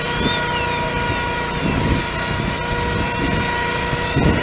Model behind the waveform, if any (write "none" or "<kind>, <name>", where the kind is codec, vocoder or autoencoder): none